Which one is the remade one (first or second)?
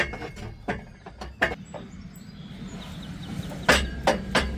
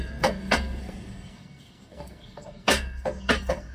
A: second